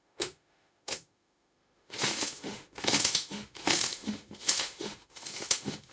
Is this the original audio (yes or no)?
no